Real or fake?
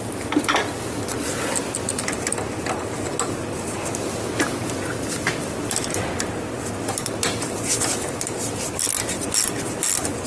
real